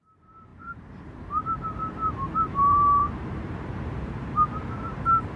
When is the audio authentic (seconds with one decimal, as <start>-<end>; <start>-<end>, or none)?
none